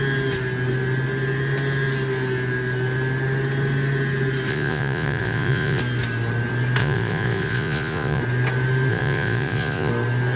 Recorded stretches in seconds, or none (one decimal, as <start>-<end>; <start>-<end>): 0.0-4.5; 5.8-6.8; 8.2-8.9; 9.9-10.4